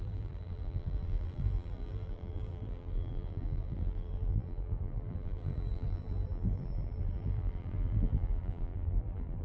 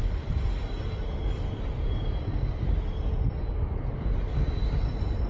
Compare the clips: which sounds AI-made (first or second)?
first